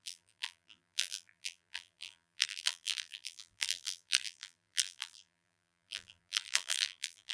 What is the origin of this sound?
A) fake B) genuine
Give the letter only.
A